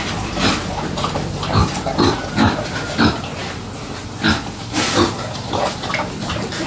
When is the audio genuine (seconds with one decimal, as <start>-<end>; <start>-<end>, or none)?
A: 3.4-4.0